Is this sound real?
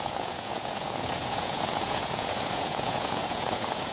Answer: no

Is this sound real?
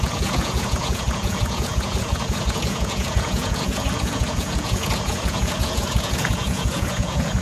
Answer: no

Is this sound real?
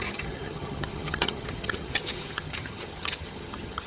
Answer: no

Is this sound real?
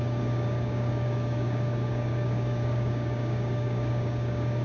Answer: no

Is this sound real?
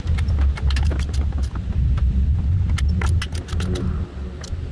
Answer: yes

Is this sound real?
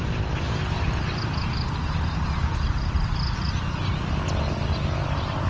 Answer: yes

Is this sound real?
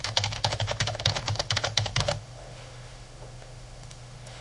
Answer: no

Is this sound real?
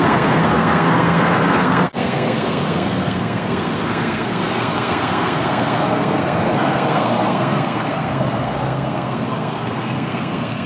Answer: no